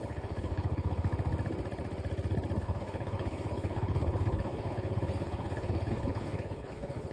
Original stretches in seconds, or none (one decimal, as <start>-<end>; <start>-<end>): 1.1-2.6